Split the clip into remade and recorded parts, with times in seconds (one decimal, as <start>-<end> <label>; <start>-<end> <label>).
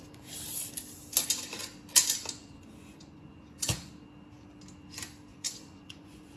0.0-2.4 recorded; 2.4-3.9 remade; 3.9-5.3 recorded; 5.3-6.4 remade